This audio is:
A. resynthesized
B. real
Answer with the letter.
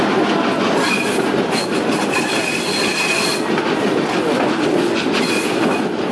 B